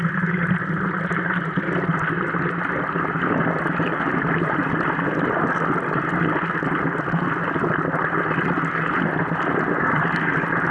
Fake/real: real